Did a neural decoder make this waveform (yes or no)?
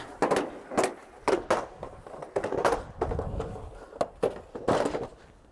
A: no